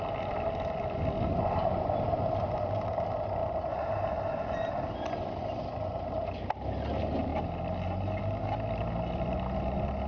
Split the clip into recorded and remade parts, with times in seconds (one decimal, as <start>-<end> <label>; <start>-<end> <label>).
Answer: 0.0-10.1 recorded